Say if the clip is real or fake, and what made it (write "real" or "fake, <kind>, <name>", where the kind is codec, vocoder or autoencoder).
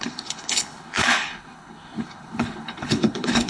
fake, codec, HILCodec